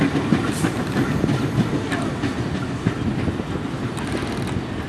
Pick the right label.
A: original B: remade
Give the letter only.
A